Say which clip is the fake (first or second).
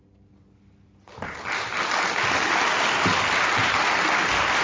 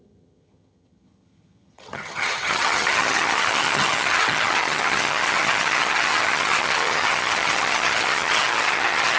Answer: second